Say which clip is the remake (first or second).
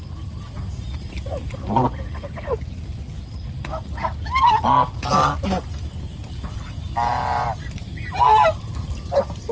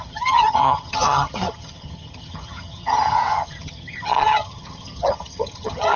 second